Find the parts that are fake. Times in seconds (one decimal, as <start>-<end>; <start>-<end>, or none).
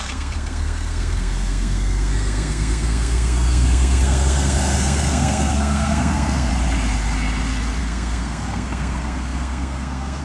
0.0-6.5; 7.8-10.2